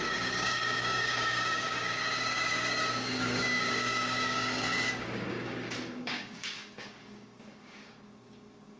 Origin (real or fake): fake